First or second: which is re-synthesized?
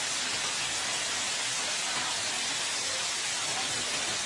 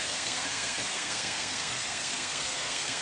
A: second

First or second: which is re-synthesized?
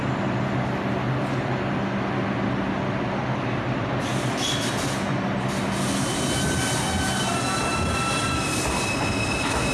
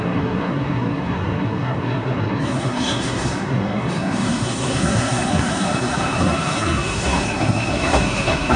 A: second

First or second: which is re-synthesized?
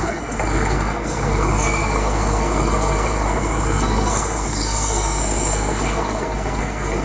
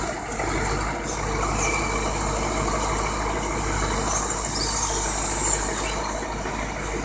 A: first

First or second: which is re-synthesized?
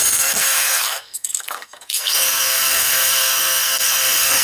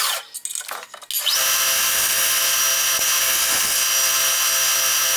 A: first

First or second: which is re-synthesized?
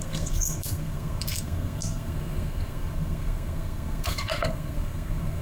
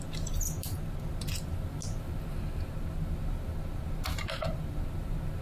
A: first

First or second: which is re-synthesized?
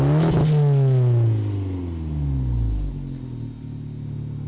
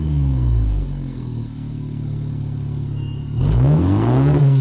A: second